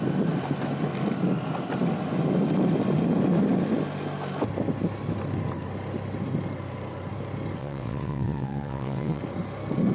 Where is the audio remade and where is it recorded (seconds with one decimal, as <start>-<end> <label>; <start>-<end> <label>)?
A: 0.0-7.6 recorded; 7.6-9.2 remade; 9.2-9.9 recorded